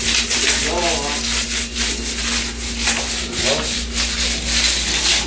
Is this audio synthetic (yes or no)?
no